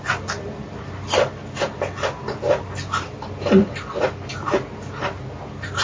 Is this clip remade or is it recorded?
recorded